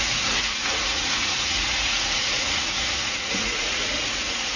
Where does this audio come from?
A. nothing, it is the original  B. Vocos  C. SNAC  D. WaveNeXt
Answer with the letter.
B